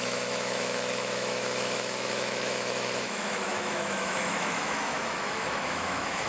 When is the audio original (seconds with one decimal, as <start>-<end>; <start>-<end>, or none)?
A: none